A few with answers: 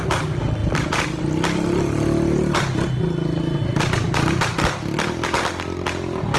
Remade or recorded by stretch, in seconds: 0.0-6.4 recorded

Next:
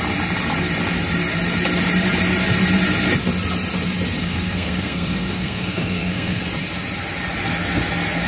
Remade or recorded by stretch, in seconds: 0.0-4.2 recorded; 4.2-6.4 remade; 6.4-8.3 recorded

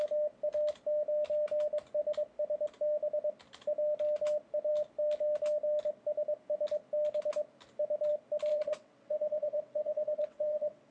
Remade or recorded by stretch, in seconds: 0.0-8.5 recorded; 8.5-10.9 remade